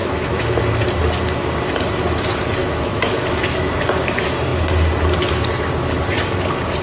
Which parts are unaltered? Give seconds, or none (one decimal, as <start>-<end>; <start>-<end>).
0.6-2.6; 3.7-6.8